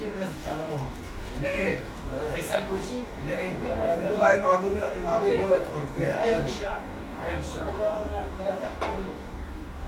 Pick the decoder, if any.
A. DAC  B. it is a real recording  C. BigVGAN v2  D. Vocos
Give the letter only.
A